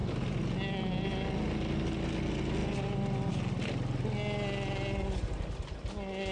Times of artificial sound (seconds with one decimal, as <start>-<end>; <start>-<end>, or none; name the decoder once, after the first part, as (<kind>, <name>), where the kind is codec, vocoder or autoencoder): none